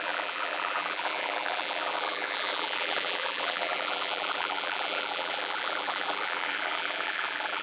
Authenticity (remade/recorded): remade